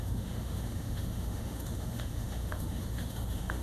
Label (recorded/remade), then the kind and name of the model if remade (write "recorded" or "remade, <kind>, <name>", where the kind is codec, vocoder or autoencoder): remade, autoencoder, DAC-VAE